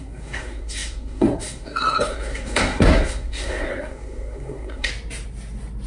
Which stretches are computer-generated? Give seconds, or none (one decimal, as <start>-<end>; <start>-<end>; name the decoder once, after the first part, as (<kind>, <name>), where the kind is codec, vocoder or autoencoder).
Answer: 0.0-4.9 (codec, SNAC)